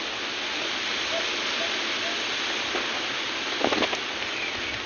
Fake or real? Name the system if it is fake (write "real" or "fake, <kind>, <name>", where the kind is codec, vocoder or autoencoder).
real